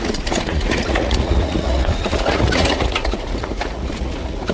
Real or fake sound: fake